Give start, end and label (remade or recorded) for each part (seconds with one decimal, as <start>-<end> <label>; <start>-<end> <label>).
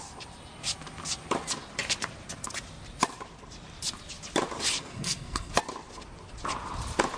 0.0-4.8 recorded; 4.8-5.5 remade; 5.5-7.2 recorded